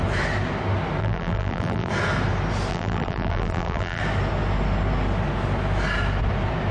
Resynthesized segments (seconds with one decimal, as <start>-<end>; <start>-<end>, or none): 1.0-1.9; 2.7-4.0